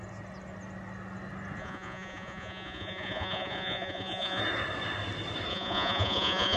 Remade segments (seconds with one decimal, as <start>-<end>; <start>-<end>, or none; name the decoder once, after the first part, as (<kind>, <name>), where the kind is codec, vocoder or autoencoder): 1.6-4.4 (vocoder, Vocos); 5.5-6.6